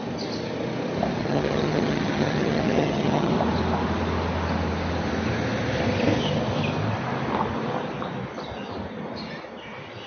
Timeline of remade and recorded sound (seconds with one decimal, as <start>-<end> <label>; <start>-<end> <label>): 0.0-1.2 recorded; 1.2-3.3 remade; 3.3-10.1 recorded